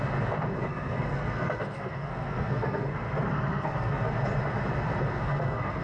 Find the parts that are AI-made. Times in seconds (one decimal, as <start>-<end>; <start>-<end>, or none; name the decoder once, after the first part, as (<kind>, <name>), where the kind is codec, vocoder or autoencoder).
0.7-4.2 (codec, SNAC); 5.1-5.8